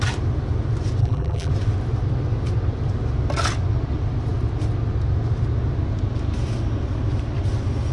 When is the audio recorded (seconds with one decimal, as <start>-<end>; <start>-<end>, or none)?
0.0-1.0; 1.5-7.9